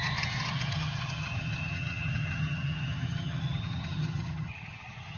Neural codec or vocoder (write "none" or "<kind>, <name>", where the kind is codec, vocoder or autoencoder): vocoder, HiFi-GAN